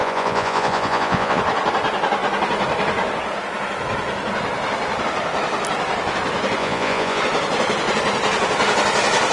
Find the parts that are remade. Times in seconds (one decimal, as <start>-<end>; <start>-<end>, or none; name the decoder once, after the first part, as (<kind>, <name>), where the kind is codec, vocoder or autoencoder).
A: 0.0-1.4 (vocoder, Vocos); 6.6-7.2